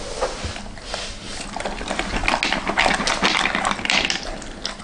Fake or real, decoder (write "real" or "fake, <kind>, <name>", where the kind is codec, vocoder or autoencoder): real